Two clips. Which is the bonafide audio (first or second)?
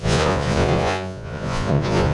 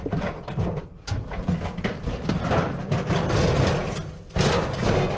second